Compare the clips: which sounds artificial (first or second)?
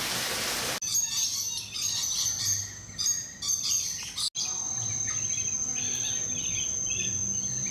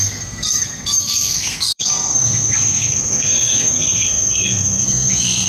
second